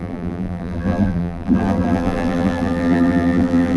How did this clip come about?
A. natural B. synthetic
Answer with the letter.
B